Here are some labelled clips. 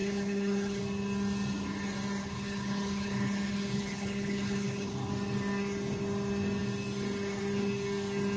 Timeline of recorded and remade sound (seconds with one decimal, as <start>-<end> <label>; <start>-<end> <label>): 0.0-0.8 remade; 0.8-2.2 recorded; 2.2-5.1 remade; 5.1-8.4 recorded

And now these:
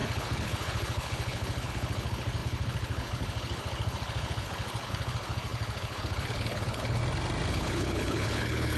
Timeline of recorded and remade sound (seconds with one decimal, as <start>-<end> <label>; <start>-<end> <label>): 0.0-7.0 remade; 7.0-7.5 recorded; 7.5-8.8 remade

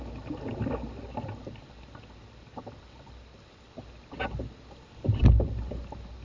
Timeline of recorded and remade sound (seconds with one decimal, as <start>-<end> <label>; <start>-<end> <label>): 0.0-6.2 recorded

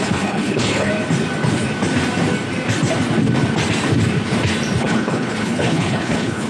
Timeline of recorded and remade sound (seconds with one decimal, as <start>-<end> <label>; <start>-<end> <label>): 0.0-0.9 remade; 0.9-4.8 recorded; 4.8-6.5 remade

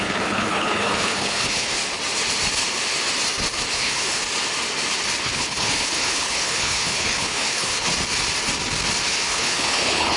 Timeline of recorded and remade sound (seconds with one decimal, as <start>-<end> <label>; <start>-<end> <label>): 0.0-1.8 remade; 1.8-3.7 recorded; 3.7-4.2 remade; 4.2-5.2 recorded; 5.2-7.9 remade; 7.9-9.1 recorded; 9.1-10.2 remade